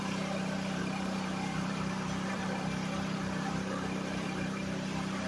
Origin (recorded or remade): remade